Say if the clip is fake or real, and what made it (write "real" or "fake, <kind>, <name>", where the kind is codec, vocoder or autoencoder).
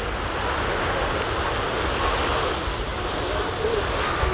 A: real